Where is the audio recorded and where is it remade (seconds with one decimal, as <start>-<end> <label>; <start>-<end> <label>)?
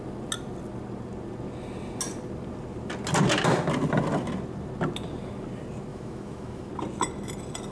0.0-5.9 recorded; 5.9-6.7 remade; 6.7-7.7 recorded